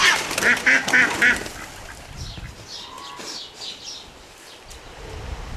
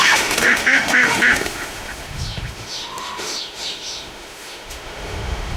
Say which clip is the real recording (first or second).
first